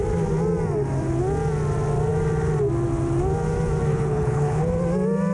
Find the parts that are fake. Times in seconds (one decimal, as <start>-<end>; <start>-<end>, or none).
3.9-4.7